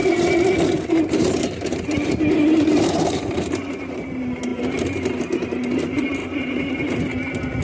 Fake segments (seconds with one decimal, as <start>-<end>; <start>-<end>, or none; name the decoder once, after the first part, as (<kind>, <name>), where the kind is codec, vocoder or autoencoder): 1.1-6.2 (vocoder, BigVGAN v2)